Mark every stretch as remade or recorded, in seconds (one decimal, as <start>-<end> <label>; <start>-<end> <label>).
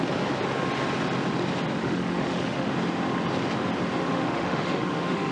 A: 0.0-1.8 recorded; 1.8-2.7 remade; 2.7-4.1 recorded; 4.1-5.3 remade